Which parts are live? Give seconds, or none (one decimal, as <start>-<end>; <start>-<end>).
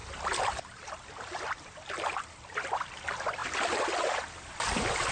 3.4-4.0